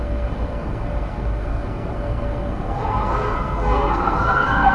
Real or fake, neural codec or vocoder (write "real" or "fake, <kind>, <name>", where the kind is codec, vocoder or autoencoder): fake, codec, SNAC